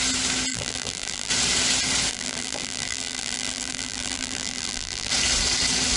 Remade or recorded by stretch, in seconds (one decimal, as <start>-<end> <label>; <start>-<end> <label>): 0.0-0.5 recorded; 0.5-1.3 remade; 1.3-2.1 recorded; 2.1-5.1 remade; 5.1-6.0 recorded